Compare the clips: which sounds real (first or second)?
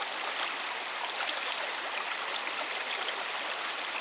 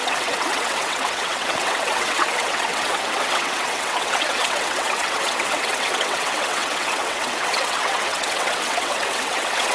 first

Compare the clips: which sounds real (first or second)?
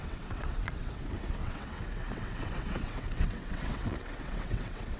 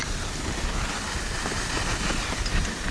second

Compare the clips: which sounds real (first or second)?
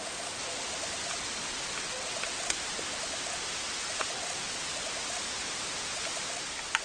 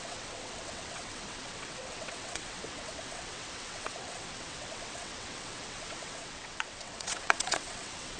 first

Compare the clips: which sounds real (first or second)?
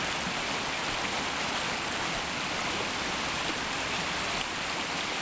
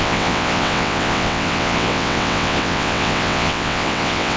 first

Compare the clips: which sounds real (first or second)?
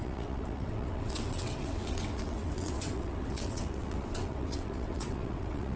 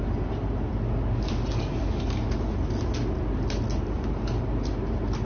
second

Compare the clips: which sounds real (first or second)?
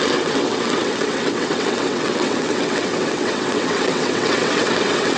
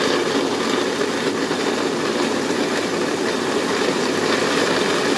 second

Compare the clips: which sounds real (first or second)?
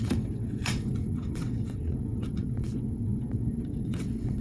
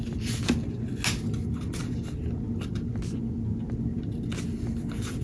second